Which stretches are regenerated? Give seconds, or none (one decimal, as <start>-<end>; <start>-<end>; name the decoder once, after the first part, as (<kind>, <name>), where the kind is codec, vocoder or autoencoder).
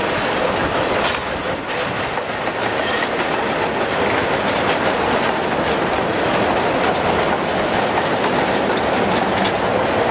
none